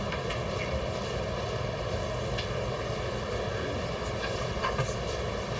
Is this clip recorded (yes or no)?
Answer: yes